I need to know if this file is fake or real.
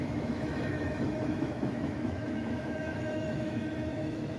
fake